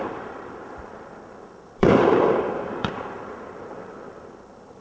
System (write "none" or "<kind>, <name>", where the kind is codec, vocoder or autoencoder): vocoder, BigVGAN v2